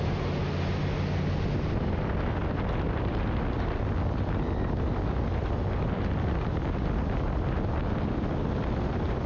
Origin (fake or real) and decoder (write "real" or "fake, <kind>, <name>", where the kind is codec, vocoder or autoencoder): real